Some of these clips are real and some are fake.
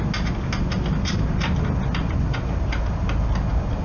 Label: real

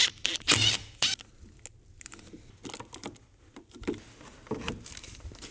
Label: real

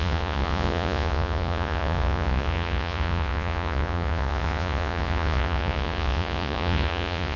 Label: fake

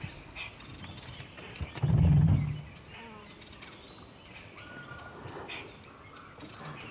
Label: real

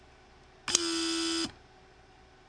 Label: real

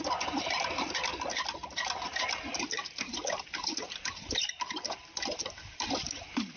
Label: real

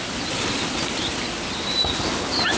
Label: real